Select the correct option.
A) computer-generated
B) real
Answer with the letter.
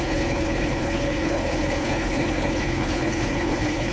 A